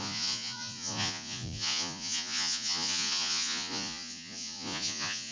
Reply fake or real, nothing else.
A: fake